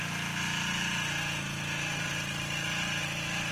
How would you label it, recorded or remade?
recorded